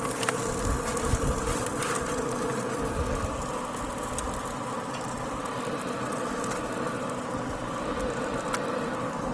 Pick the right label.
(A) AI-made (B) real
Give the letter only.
B